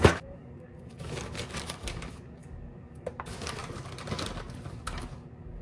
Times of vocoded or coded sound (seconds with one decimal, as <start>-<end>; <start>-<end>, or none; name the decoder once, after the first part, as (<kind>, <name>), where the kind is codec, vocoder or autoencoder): 0.0-3.6 (codec, DAC); 4.7-5.6